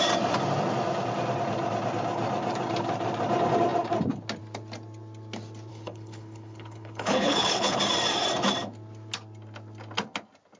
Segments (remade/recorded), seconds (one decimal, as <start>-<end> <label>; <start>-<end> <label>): 0.0-5.7 recorded; 5.7-7.8 remade; 7.8-10.6 recorded